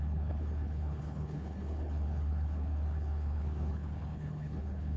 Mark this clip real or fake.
fake